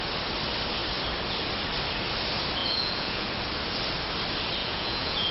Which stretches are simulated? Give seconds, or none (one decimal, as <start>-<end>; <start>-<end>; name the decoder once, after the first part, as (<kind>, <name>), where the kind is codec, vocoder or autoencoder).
2.6-3.3 (vocoder, Vocos); 4.6-5.3